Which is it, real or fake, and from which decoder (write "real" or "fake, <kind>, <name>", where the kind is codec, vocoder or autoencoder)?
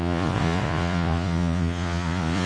fake, vocoder, Vocos